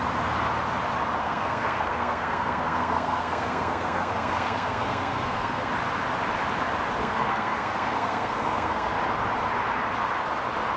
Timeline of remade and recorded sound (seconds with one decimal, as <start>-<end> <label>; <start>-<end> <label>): 0.0-1.2 recorded; 1.2-5.7 remade; 5.7-7.0 recorded; 7.0-8.9 remade; 8.9-10.8 recorded